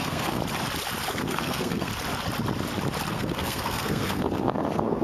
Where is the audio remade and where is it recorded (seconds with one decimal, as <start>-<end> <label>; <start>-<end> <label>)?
0.0-0.4 remade; 0.4-1.1 recorded; 1.1-1.9 remade; 1.9-3.1 recorded; 3.1-5.0 remade